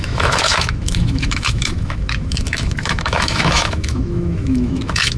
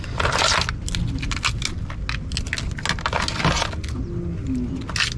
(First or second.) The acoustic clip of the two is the second